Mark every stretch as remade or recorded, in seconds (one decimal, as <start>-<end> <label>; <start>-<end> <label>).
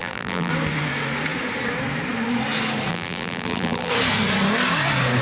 0.0-0.5 remade; 0.5-2.9 recorded; 2.9-3.9 remade; 3.9-5.2 recorded